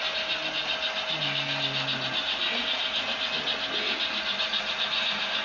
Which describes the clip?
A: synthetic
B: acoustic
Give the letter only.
B